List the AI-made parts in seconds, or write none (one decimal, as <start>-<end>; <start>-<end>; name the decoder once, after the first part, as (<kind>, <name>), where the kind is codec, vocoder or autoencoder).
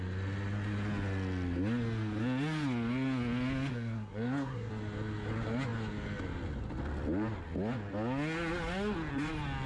3.7-4.7 (codec, SNAC)